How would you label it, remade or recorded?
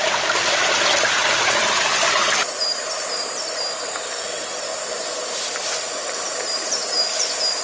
recorded